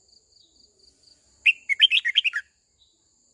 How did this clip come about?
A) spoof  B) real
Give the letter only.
B